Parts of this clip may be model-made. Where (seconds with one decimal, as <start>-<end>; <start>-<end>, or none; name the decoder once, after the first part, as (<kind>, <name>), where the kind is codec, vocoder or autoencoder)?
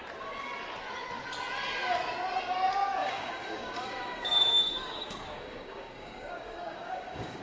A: 3.0-7.4 (codec, DAC)